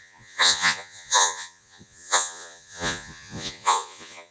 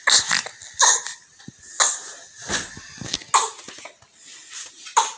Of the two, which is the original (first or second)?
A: second